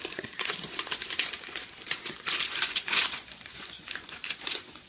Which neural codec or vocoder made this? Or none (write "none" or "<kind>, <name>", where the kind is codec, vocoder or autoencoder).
vocoder, Vocos